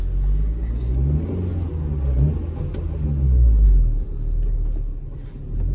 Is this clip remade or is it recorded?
recorded